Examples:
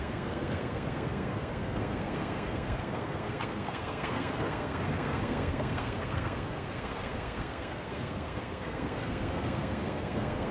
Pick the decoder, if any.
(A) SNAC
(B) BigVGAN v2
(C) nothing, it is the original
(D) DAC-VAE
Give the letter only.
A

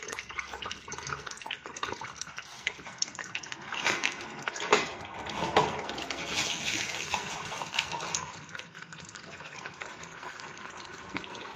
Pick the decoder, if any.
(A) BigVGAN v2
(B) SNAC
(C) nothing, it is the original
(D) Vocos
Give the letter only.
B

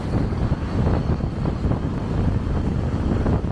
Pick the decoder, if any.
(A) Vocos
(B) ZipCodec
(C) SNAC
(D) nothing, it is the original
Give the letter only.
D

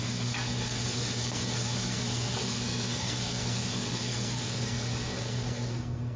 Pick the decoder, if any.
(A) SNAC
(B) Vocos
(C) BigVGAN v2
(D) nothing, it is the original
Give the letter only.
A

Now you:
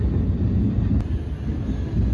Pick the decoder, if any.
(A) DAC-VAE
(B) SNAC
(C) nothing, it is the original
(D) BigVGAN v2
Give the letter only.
C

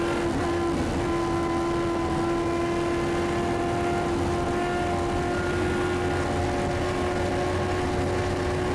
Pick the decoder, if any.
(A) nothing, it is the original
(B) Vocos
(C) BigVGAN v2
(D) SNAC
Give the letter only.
A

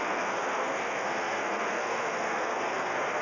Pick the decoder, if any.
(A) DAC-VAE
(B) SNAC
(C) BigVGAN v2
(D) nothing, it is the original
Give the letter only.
B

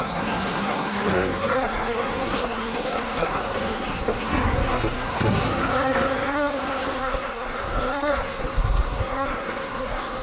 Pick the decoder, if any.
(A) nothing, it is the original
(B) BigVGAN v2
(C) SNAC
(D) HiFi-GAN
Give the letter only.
C